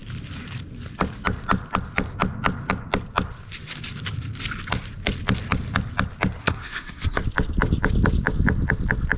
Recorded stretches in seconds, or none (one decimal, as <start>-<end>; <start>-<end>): 0.0-6.4; 7.2-9.2